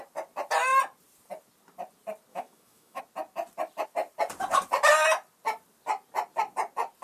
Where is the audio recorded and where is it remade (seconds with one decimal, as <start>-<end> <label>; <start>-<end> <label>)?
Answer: 0.0-2.3 recorded; 2.3-3.0 remade; 3.0-7.0 recorded